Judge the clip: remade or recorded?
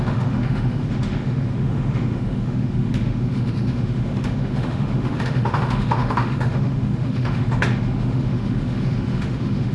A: remade